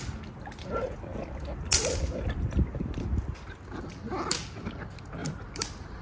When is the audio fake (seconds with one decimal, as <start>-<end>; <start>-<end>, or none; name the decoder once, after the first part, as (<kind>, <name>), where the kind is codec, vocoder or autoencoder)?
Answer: 5.2-6.0 (vocoder, BigVGAN v2)